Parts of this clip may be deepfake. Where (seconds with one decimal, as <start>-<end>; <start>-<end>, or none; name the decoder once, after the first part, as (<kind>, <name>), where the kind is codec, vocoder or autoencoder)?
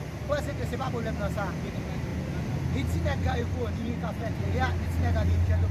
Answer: 0.0-5.7 (vocoder, BigVGAN v2)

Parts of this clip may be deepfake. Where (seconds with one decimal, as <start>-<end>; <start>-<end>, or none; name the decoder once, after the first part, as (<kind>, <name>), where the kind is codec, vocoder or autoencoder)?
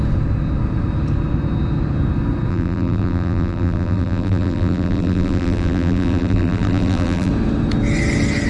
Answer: 2.5-7.3 (vocoder, BigVGAN v2)